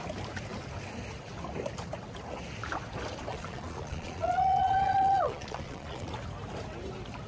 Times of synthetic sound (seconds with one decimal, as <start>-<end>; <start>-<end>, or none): 3.3-6.1